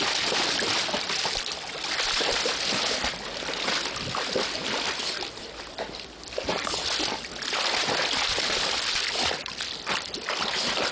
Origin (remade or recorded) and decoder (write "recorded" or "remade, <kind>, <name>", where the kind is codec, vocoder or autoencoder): remade, vocoder, BigVGAN v2